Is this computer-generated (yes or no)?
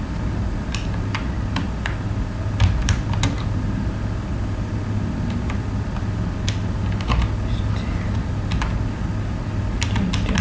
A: no